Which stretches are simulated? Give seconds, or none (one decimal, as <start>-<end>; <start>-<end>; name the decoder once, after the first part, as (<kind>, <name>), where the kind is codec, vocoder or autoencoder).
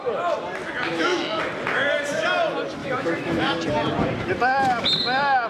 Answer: 0.9-1.4 (autoencoder, DAC-VAE); 2.8-3.5